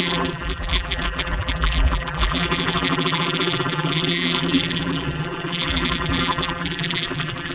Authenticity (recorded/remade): remade